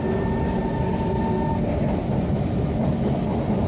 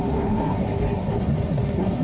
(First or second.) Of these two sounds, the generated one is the second